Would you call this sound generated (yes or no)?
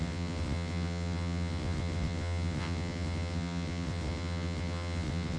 yes